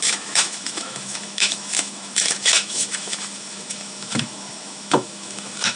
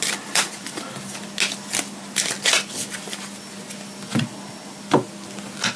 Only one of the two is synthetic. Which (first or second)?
first